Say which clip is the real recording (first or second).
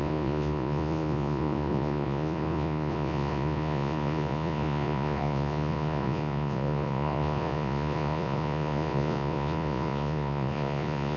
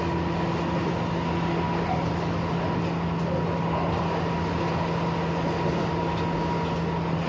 second